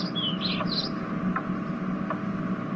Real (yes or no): yes